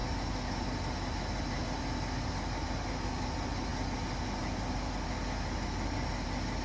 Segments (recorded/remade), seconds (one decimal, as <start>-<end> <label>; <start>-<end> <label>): 0.0-6.6 recorded